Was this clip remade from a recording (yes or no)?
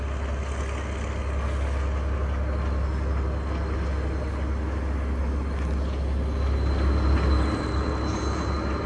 no